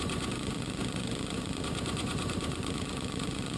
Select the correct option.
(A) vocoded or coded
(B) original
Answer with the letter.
A